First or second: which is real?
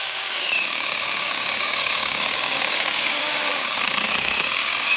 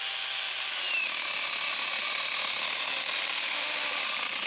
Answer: second